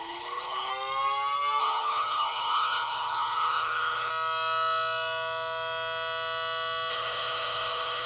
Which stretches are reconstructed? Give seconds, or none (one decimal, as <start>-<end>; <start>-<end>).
0.0-0.7; 1.6-4.1; 6.9-8.1